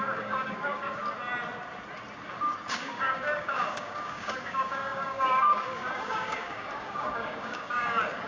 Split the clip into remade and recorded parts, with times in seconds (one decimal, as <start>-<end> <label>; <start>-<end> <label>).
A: 0.0-1.0 remade; 1.0-2.7 recorded; 2.7-8.3 remade